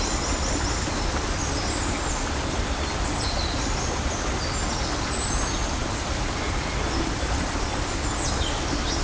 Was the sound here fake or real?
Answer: real